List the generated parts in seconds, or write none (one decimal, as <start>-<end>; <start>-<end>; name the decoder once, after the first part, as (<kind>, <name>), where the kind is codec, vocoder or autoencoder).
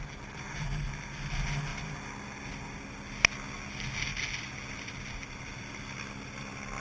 none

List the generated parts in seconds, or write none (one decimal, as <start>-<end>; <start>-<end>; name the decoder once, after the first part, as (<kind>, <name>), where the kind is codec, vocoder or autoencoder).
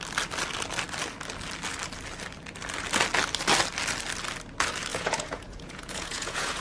4.9-6.6 (vocoder, Vocos)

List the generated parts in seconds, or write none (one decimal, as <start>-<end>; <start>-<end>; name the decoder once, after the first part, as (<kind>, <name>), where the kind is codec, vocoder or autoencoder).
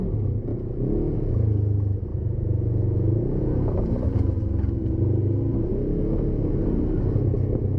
0.5-1.3 (vocoder, Vocos); 2.1-3.7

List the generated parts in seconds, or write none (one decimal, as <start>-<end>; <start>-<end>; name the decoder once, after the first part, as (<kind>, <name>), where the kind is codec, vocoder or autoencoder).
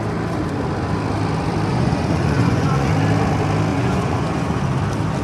1.7-2.9 (vocoder, Vocos); 3.7-4.6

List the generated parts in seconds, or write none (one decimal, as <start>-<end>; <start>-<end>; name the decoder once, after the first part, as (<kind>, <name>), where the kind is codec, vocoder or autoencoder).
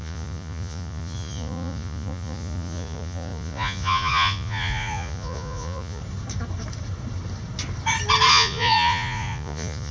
0.0-6.0 (vocoder, Vocos); 8.3-9.9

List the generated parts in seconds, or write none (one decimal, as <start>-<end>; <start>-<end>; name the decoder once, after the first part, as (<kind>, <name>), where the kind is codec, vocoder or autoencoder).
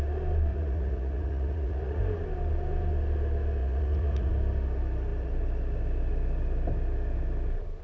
0.5-2.0 (vocoder, Vocos); 3.6-4.3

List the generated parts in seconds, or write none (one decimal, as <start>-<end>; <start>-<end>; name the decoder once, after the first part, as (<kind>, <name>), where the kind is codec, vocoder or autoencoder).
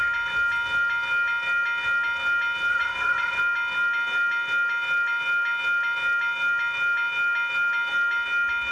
2.7-3.4 (vocoder, Vocos)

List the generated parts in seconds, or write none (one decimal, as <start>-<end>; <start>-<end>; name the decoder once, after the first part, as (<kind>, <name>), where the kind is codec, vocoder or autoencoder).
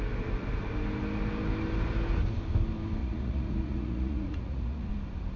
3.0-4.9 (vocoder, Vocos)